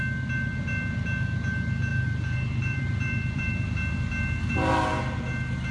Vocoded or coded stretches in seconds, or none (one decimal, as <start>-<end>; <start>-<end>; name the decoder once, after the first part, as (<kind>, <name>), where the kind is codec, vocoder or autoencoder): 1.9-4.1 (vocoder, BigVGAN v2)